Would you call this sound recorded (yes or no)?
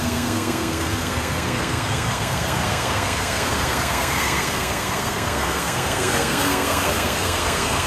no